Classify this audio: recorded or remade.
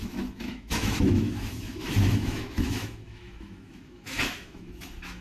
remade